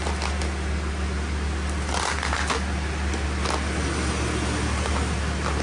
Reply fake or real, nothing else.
real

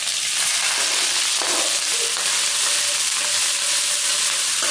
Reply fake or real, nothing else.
real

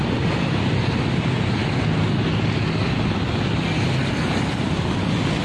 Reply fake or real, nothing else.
real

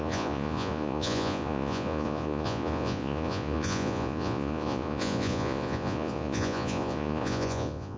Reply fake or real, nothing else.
fake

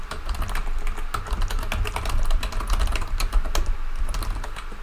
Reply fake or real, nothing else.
real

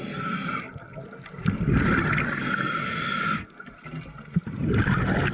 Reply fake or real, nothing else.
real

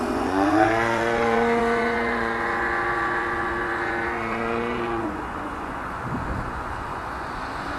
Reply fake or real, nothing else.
fake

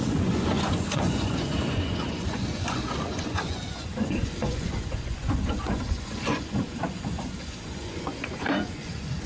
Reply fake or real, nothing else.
fake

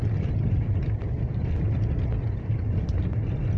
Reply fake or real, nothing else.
real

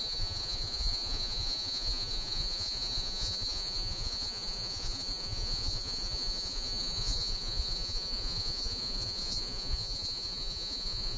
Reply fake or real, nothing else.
fake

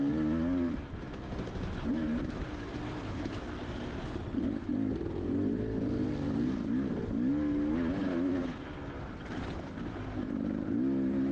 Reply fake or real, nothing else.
real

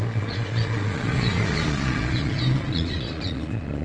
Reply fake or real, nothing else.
fake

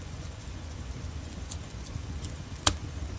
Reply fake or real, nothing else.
fake